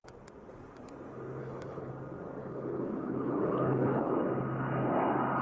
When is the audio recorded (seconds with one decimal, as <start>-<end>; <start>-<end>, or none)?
0.0-1.4; 1.9-2.4; 4.1-5.4